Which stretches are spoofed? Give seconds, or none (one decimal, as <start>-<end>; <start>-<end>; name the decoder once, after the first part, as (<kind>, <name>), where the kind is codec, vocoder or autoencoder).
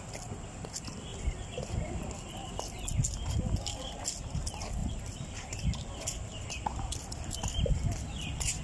4.8-6.5 (vocoder, BigVGAN v2)